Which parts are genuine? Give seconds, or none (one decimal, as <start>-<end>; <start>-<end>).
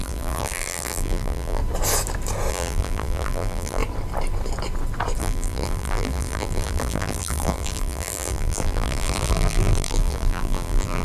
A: 1.6-2.5; 3.8-5.2